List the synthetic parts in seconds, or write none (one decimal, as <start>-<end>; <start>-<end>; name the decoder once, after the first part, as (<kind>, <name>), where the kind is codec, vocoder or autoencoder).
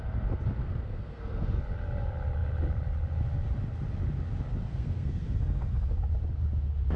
0.6-1.6 (codec, SNAC); 4.7-6.0